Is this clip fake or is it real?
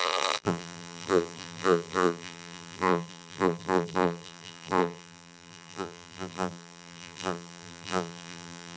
fake